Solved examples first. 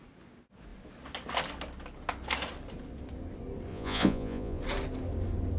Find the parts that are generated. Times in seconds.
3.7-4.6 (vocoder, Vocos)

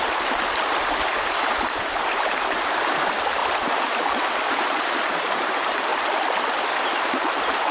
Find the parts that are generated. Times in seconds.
0.0-5.9 (vocoder, BigVGAN v2); 6.9-7.7

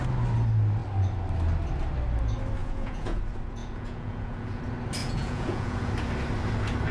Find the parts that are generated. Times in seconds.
2.6-3.2 (vocoder, Vocos); 3.6-4.6; 5.0-5.9